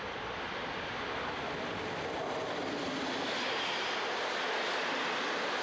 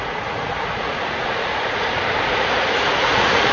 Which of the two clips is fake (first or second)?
second